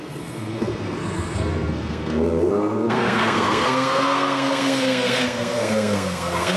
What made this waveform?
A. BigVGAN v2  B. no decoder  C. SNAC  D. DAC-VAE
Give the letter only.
C